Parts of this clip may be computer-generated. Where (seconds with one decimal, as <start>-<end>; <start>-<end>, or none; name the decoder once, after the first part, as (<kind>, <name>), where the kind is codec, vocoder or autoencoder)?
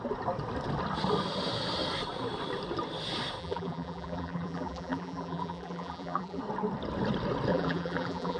3.4-6.4 (vocoder, BigVGAN v2); 7.5-8.4